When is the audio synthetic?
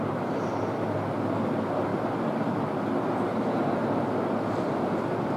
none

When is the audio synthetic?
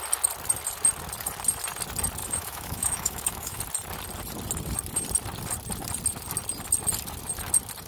2.2-3.6 (autoencoder, DAC-VAE)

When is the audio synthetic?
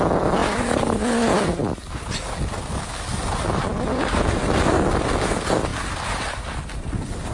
none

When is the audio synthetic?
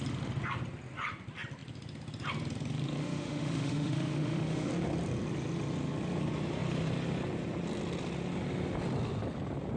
3.0-4.7 (autoencoder, DAC-VAE)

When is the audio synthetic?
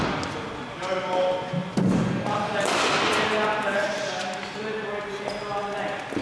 none